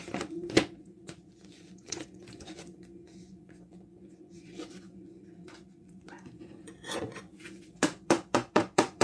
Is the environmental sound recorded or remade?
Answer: remade